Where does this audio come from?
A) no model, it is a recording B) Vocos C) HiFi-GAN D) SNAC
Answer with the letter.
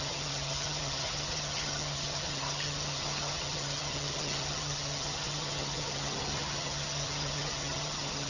C